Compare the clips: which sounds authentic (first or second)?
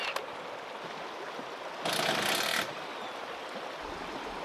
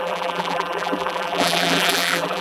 first